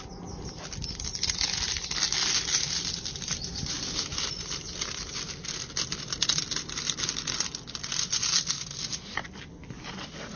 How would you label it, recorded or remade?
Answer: recorded